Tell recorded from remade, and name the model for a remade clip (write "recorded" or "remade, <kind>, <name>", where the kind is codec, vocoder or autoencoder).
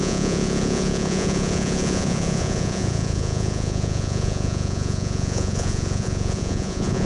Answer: remade, vocoder, Vocos